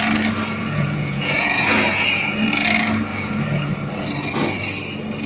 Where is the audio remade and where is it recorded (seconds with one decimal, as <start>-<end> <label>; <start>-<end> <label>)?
0.0-0.6 recorded; 0.6-2.4 remade; 2.4-3.1 recorded; 3.1-3.7 remade; 3.7-5.3 recorded